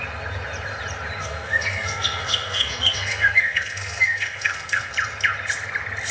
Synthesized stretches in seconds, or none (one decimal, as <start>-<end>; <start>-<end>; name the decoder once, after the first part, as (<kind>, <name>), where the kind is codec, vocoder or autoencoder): 1.2-4.9 (codec, SNAC)